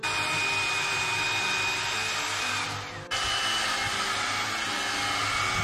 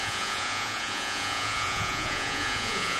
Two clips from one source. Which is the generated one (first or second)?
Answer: second